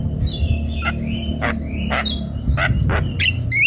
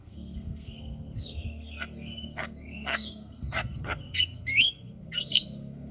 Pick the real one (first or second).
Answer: first